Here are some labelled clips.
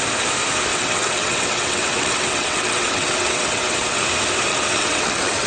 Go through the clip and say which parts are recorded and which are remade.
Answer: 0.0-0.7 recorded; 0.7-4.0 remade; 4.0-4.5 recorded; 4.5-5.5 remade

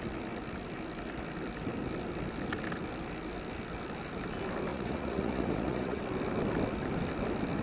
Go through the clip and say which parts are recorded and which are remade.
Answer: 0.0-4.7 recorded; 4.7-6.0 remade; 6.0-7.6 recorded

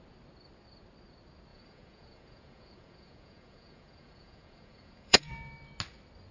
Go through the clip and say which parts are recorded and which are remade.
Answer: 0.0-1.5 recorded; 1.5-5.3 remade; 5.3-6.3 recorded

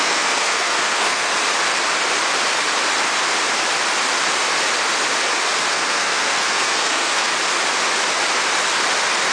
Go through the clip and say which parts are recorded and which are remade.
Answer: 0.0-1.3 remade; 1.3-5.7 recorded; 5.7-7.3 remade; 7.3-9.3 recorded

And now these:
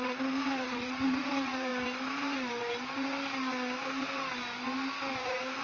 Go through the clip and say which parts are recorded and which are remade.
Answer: 0.0-1.7 remade; 1.7-5.1 recorded; 5.1-5.6 remade